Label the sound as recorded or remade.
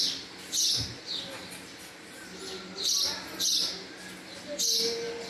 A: recorded